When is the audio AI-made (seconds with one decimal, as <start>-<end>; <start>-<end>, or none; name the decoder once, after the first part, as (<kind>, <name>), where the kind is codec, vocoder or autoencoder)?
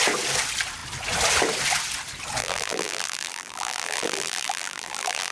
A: 2.4-5.3 (vocoder, BigVGAN v2)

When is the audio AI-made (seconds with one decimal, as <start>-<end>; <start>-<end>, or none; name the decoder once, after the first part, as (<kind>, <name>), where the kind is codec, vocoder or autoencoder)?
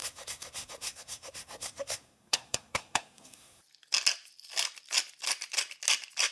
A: 0.0-3.6 (codec, SNAC)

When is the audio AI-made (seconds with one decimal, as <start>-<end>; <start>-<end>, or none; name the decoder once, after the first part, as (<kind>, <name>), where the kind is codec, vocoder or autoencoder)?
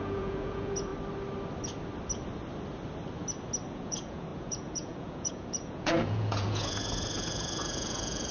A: 0.0-0.9 (vocoder, Vocos); 3.7-8.3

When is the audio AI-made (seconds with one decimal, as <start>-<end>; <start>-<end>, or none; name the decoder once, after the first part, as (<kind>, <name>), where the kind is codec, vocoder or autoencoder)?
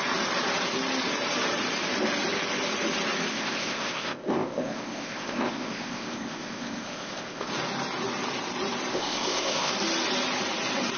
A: 3.3-7.5 (codec, ZipCodec); 8.9-9.7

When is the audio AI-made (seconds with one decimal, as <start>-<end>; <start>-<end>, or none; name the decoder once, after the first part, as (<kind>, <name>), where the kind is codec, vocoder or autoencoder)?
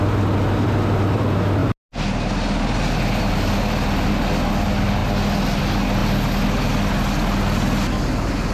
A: none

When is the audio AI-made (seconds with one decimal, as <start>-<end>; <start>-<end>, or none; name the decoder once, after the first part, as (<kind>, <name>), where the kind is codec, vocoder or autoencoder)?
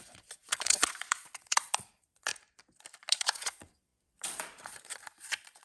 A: 0.0-2.3 (vocoder, Vocos); 3.1-5.6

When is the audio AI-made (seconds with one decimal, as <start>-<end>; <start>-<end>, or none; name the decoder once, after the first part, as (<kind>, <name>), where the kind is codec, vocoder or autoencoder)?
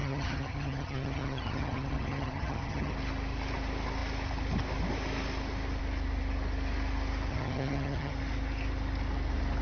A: 0.0-2.9 (vocoder, HiFi-GAN); 7.3-8.1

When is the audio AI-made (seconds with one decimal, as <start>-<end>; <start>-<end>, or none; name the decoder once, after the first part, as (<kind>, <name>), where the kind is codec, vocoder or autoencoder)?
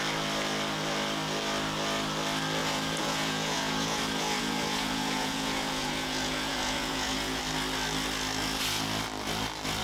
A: 2.6-7.4 (vocoder, Vocos)